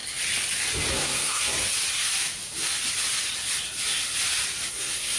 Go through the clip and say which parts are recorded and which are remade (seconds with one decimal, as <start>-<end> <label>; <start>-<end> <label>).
0.0-0.9 recorded; 0.9-1.6 remade; 1.6-4.7 recorded; 4.7-5.2 remade